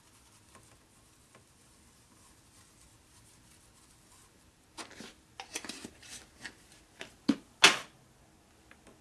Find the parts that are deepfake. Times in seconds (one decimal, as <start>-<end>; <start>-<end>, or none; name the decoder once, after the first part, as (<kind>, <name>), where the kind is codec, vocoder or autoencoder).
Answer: none